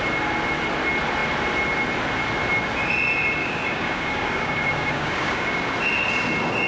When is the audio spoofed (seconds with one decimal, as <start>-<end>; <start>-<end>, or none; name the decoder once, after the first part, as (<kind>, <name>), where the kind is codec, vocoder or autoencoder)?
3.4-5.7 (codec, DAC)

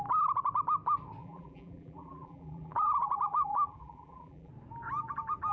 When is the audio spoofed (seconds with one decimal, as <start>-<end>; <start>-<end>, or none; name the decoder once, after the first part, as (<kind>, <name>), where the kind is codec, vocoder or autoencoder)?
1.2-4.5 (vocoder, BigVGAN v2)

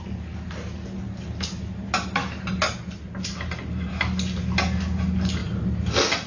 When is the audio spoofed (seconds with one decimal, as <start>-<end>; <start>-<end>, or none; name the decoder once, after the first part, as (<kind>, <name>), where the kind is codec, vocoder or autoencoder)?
5.4-6.3 (vocoder, BigVGAN v2)

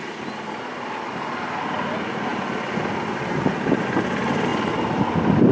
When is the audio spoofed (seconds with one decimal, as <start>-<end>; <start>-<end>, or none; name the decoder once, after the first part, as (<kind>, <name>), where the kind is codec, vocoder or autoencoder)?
none

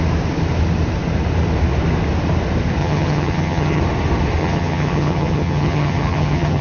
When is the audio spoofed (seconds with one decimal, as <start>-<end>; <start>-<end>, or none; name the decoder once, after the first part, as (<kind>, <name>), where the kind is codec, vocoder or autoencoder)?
2.8-3.8 (vocoder, HiFi-GAN); 4.4-6.6

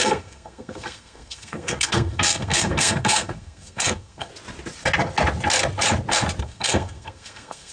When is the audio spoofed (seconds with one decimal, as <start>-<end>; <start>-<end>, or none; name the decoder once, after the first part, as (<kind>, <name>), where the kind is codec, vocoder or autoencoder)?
0.0-4.3 (codec, SNAC); 6.4-7.7

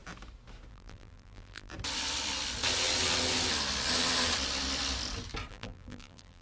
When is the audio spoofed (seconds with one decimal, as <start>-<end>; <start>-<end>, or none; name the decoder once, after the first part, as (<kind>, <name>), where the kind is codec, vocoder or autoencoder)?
0.7-1.7 (vocoder, BigVGAN v2); 5.5-6.4

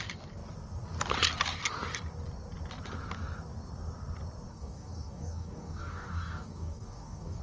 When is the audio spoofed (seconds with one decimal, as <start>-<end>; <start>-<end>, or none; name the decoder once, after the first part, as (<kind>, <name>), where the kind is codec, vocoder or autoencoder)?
4.5-7.4 (codec, DAC)